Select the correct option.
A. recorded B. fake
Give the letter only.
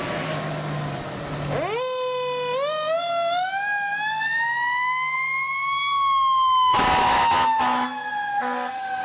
A